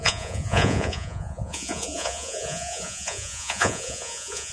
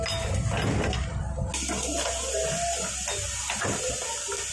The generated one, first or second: first